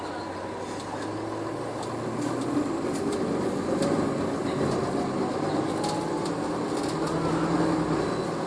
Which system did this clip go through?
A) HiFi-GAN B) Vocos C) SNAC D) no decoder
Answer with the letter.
D